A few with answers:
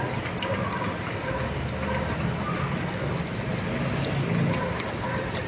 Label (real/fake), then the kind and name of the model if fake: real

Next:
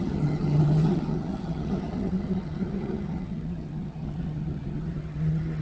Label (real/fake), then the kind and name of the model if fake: fake, vocoder, HiFi-GAN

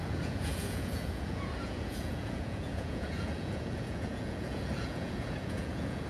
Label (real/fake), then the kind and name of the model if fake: fake, vocoder, Vocos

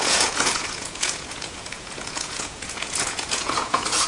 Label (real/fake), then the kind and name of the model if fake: fake, vocoder, Vocos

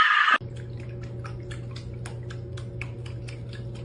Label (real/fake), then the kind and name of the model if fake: real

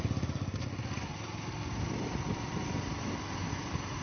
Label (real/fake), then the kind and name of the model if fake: real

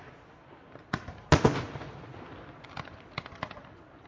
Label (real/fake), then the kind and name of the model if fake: real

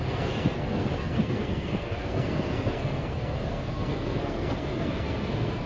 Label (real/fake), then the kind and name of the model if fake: fake, codec, SNAC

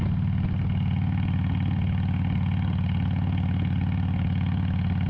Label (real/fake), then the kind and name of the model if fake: real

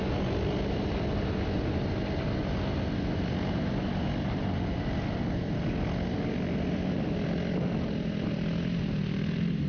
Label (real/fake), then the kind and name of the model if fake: real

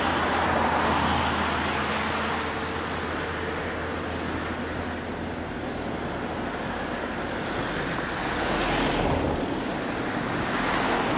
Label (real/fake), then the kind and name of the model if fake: real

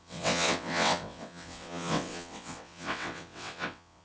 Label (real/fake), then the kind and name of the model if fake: fake, vocoder, WaveNeXt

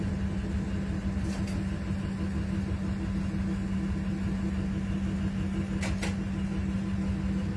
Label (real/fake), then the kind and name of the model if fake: real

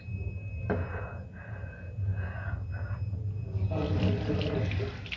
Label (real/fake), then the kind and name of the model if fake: real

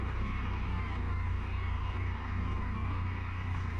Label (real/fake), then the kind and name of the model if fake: fake, codec, DAC